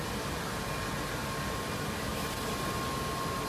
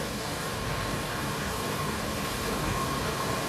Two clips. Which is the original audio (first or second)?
first